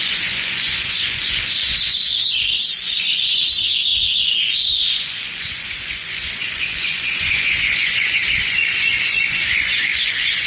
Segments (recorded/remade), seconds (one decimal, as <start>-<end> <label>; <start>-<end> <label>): 0.0-10.5 remade

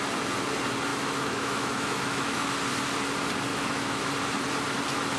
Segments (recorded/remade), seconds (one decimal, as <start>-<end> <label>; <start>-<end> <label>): 0.0-0.9 recorded; 0.9-2.5 remade; 2.5-3.5 recorded; 3.5-4.1 remade; 4.1-5.2 recorded

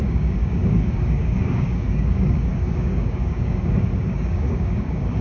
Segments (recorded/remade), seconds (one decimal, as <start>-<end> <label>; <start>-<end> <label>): 0.0-5.2 remade